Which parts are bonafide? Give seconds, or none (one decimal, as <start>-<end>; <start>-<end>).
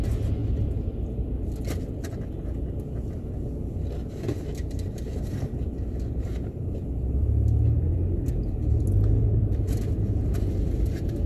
0.0-9.4; 10.5-11.3